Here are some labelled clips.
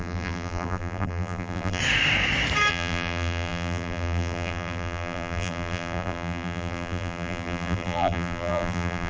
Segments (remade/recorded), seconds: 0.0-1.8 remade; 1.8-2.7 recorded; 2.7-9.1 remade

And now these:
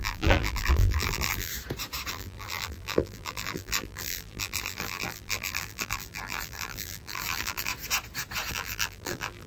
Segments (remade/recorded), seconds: 0.0-1.5 remade; 1.5-2.1 recorded; 2.1-7.7 remade; 7.7-8.5 recorded; 8.5-9.5 remade

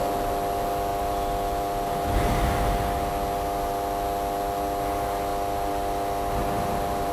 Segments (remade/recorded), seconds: 0.0-0.9 recorded; 0.9-3.1 remade; 3.1-5.3 recorded; 5.3-7.1 remade

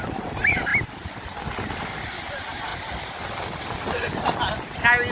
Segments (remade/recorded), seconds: 0.0-0.7 remade; 0.7-1.7 recorded; 1.7-2.7 remade; 2.7-5.1 recorded

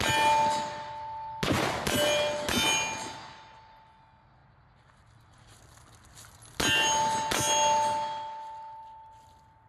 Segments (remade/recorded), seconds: 0.0-9.7 recorded

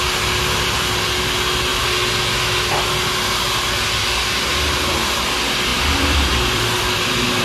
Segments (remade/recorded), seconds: 0.0-5.7 recorded; 5.7-6.9 remade; 6.9-7.4 recorded

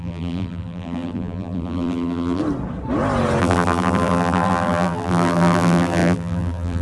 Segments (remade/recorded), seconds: 0.0-2.4 remade; 2.4-3.4 recorded; 3.4-6.8 remade

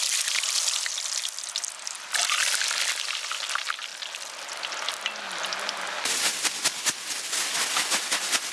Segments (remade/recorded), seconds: 0.0-8.5 recorded